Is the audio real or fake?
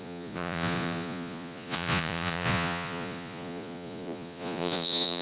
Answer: fake